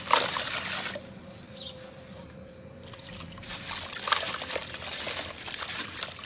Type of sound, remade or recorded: recorded